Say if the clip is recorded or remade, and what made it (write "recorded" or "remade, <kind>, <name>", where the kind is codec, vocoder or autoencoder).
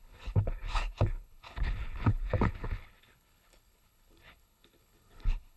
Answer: remade, codec, HILCodec